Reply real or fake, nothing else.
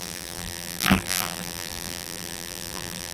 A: fake